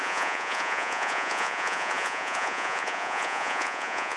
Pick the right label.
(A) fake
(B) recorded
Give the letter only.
A